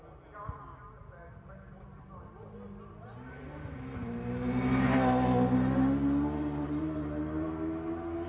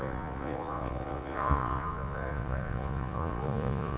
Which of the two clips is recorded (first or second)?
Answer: first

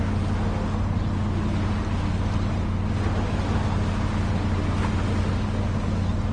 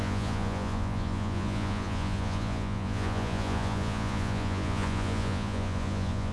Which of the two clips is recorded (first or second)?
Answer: first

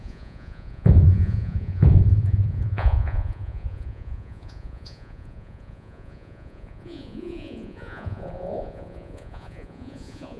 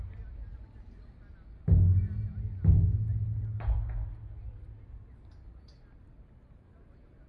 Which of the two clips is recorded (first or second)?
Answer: second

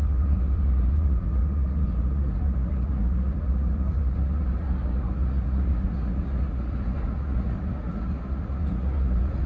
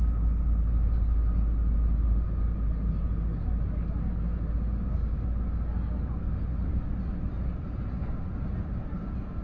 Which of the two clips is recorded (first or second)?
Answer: second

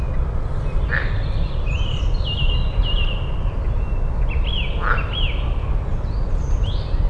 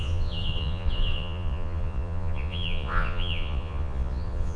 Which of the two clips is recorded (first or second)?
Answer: first